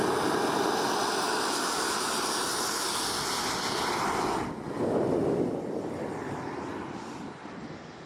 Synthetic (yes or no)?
no